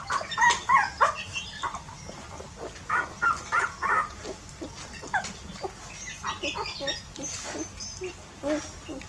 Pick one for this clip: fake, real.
real